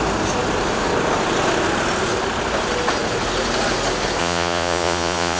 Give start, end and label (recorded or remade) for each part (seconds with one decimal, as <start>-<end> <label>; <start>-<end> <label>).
0.0-4.2 recorded; 4.2-5.4 remade